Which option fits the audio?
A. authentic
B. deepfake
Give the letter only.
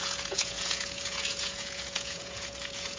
B